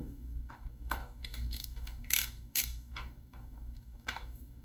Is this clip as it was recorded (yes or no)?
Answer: no